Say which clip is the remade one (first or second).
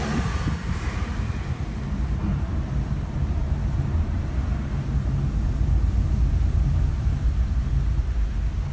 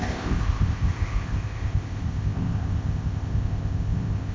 second